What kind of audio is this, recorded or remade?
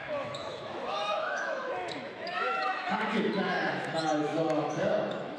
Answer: remade